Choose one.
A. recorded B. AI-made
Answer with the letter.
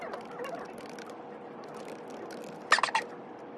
A